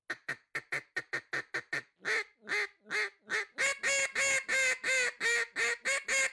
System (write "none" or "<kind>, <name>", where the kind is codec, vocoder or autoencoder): none